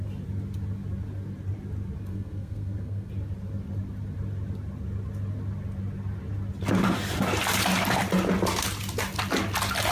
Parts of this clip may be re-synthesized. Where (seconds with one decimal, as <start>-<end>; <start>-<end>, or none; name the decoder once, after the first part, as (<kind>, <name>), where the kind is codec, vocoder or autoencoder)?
2.1-3.1 (codec, SNAC)

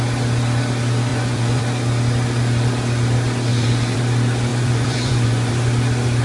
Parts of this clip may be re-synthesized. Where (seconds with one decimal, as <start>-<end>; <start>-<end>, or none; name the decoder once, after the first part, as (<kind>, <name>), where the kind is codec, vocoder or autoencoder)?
1.1-1.6 (vocoder, Vocos); 3.5-4.0; 4.5-5.5

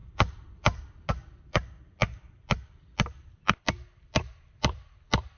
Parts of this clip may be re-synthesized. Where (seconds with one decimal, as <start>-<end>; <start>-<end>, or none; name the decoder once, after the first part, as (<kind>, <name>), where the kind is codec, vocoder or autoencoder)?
2.1-5.4 (vocoder, BigVGAN v2)

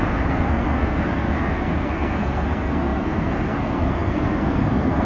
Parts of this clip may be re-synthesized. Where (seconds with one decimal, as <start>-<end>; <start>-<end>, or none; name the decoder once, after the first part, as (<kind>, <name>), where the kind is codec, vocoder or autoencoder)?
0.0-5.0 (codec, SNAC)

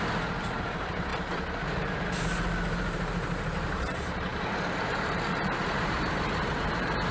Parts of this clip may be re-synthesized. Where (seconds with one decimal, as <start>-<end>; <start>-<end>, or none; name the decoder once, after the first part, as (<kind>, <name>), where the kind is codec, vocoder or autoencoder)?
0.0-1.1 (vocoder, BigVGAN v2); 1.7-7.1

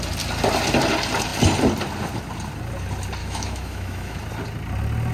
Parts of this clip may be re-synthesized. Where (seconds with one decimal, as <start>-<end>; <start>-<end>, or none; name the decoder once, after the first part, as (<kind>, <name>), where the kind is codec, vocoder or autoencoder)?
3.2-4.2 (autoencoder, DAC-VAE)

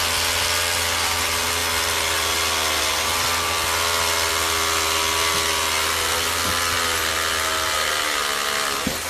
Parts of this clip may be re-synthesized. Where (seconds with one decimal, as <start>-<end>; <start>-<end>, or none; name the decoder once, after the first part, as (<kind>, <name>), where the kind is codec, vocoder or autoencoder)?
none